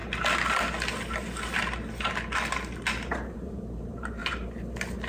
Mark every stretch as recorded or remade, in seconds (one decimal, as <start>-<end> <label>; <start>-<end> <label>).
0.0-3.1 recorded; 3.1-4.2 remade; 4.2-5.1 recorded